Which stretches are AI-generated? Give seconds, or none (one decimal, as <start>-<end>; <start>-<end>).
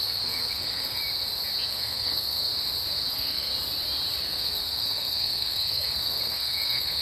0.0-1.0; 1.7-2.5; 3.1-3.5; 4.2-7.0